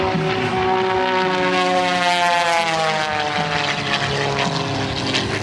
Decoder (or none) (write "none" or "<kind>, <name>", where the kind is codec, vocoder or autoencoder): none